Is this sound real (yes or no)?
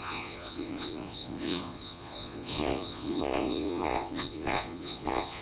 no